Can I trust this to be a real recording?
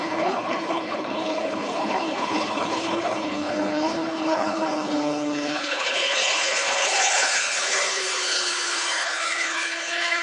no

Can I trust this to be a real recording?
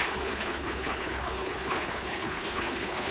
no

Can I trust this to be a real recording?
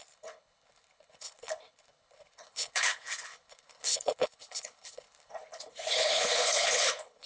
no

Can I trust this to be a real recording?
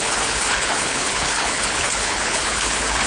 no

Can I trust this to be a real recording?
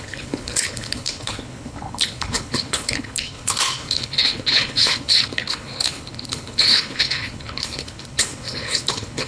no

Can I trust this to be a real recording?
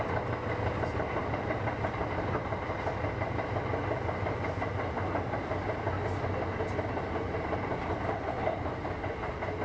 yes